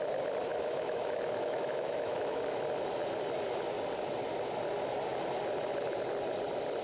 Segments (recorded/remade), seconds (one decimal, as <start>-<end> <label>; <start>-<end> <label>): 0.0-0.5 recorded; 0.5-2.5 remade; 2.5-6.8 recorded